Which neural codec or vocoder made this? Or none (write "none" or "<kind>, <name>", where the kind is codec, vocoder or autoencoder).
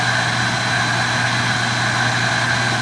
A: none